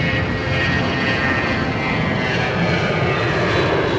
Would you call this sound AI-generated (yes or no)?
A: no